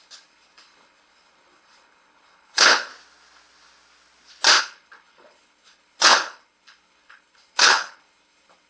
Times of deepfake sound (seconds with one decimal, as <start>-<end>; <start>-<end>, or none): 0.0-2.9; 4.6-8.7